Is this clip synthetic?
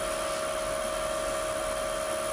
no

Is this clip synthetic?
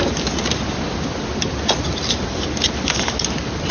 no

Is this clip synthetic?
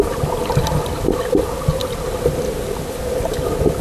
no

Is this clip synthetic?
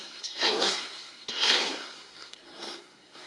yes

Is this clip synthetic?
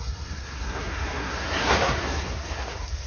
yes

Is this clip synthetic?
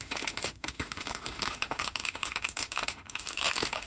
yes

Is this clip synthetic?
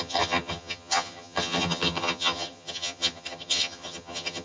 yes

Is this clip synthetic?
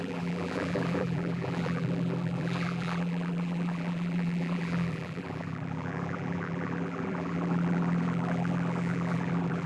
yes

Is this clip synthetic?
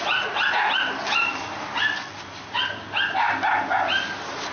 no